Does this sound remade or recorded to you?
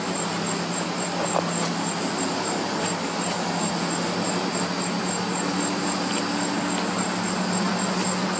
recorded